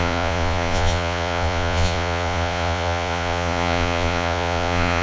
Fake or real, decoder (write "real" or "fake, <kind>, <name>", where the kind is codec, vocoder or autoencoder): fake, vocoder, Vocos